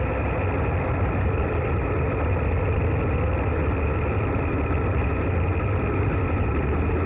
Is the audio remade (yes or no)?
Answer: no